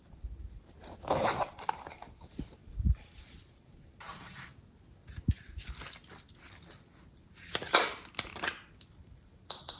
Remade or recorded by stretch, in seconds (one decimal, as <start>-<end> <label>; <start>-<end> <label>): 0.0-4.5 remade; 4.5-8.9 recorded; 8.9-9.8 remade